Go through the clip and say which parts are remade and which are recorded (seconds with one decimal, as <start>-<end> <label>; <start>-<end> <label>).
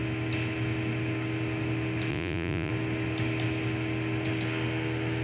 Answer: 0.0-2.1 recorded; 2.1-2.7 remade; 2.7-5.2 recorded